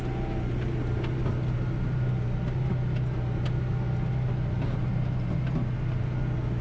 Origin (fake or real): real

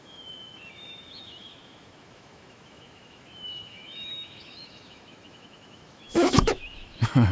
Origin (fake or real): fake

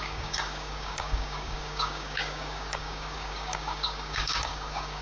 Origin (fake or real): fake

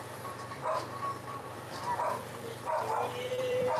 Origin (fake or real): fake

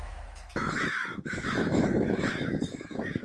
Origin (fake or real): fake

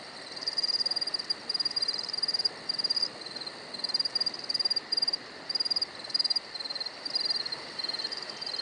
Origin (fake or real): fake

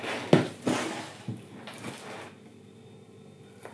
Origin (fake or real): real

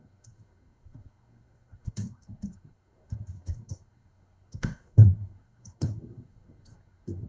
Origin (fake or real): fake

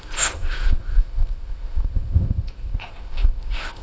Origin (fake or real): fake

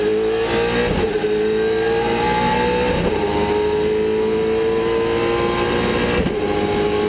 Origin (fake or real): real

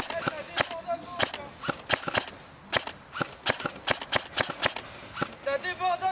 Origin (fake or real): real